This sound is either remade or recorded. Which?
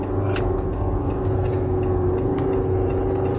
recorded